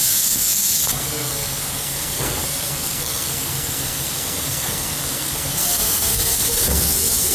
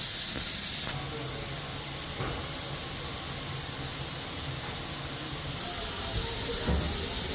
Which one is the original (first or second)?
second